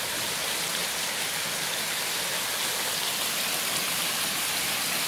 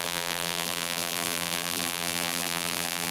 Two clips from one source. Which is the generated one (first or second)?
second